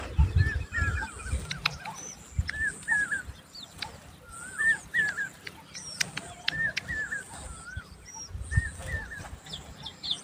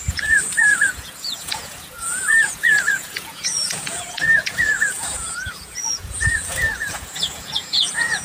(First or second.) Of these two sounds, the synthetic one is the second